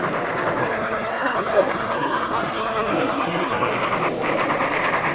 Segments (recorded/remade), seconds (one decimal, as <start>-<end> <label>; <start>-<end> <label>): 0.0-0.6 recorded; 0.6-3.7 remade; 3.7-5.1 recorded

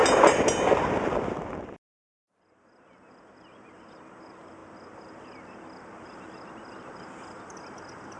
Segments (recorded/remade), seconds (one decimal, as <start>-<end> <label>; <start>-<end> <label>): 0.0-2.4 remade; 2.4-4.6 recorded; 4.6-6.5 remade; 6.5-8.2 recorded

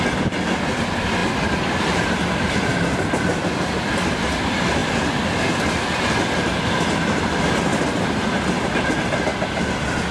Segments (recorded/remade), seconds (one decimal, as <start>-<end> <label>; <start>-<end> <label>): 0.0-10.1 recorded

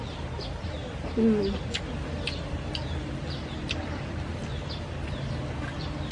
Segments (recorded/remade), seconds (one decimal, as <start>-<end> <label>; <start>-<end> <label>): 0.0-6.1 recorded

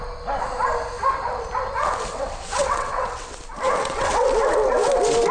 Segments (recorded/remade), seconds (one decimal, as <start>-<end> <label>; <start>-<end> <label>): 0.0-2.1 recorded; 2.1-3.4 remade; 3.4-3.8 recorded; 3.8-4.3 remade; 4.3-5.3 recorded

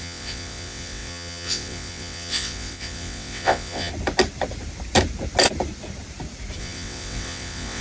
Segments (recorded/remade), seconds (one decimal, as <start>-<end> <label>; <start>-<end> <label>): 0.0-3.9 remade; 3.9-6.6 recorded; 6.6-7.8 remade

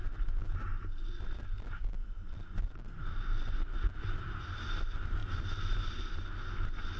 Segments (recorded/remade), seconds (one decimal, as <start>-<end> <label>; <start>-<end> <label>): 0.0-7.0 recorded

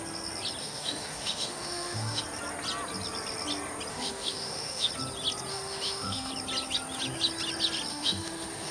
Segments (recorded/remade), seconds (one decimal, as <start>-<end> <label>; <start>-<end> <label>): 0.0-0.6 recorded; 0.6-2.2 remade; 2.2-3.9 recorded; 3.9-4.9 remade; 4.9-5.5 recorded; 5.5-6.3 remade; 6.3-7.9 recorded; 7.9-8.7 remade